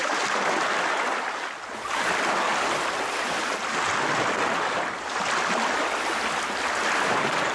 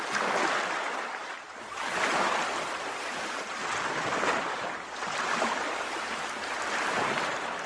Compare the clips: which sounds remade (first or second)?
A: second